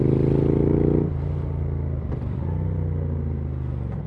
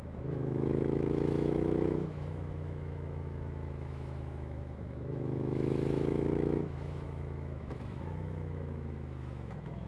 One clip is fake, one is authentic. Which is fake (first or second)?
second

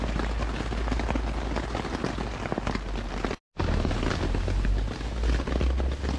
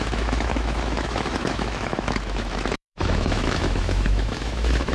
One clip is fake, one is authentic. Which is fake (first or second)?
second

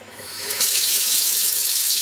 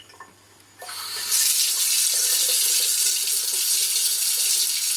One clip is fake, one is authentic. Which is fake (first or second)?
first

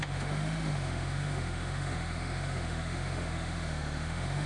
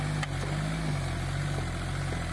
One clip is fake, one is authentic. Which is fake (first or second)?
first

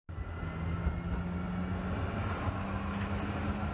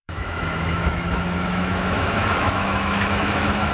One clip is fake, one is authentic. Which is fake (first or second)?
second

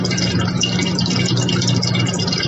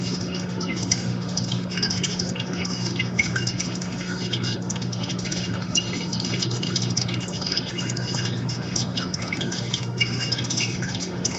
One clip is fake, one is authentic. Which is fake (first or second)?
second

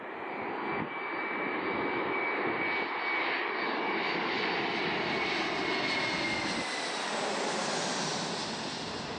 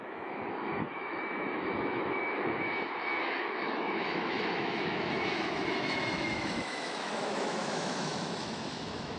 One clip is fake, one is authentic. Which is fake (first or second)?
second